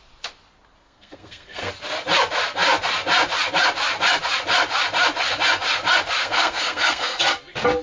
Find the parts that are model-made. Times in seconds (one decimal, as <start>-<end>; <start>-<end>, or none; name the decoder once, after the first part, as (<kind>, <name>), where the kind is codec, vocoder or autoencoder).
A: 0.8-1.7 (codec, SNAC); 6.2-7.2